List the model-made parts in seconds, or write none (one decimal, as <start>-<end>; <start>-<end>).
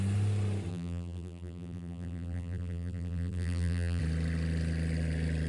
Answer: 0.7-4.0